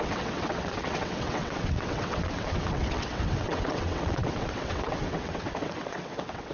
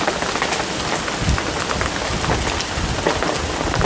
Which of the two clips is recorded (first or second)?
second